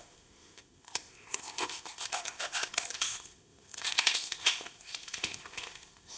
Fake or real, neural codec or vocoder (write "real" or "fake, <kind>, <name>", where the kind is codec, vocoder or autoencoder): fake, codec, ZipCodec